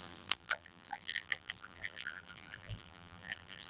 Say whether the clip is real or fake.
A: fake